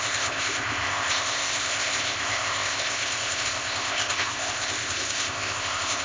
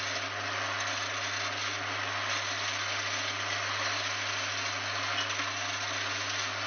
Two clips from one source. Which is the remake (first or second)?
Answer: first